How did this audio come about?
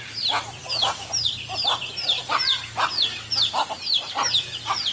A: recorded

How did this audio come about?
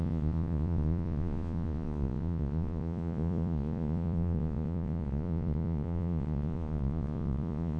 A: remade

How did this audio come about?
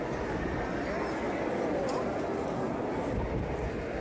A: recorded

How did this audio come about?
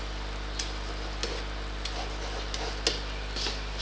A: recorded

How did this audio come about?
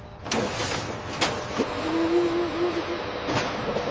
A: recorded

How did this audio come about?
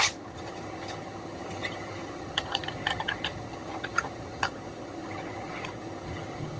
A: remade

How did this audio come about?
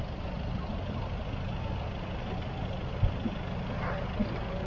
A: recorded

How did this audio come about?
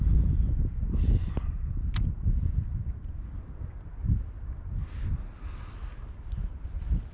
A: recorded